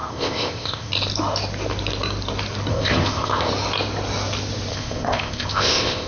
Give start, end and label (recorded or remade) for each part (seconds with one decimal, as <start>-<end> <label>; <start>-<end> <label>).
0.0-0.9 remade; 0.9-2.7 recorded; 2.7-3.5 remade; 3.5-4.7 recorded; 4.7-6.1 remade